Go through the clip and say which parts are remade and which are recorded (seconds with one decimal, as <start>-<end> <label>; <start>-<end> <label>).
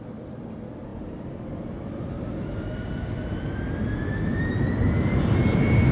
0.0-5.9 recorded